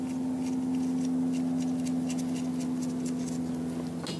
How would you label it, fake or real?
real